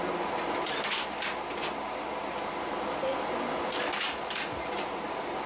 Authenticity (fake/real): real